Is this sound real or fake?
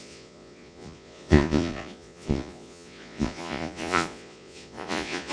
fake